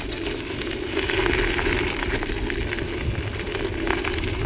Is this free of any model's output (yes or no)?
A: yes